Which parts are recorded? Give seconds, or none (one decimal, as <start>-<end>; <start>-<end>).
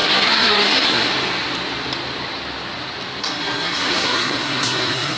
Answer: 1.1-3.2